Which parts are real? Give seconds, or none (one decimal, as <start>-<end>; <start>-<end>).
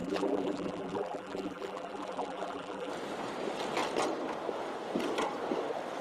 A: 2.9-6.0